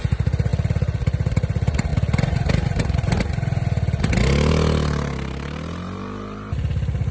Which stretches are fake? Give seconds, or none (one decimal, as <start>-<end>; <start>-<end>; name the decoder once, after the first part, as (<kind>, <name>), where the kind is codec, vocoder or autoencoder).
none